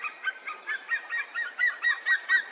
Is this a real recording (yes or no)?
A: no